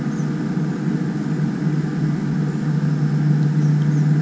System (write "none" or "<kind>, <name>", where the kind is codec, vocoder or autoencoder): none